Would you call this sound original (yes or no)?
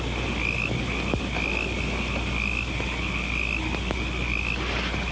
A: yes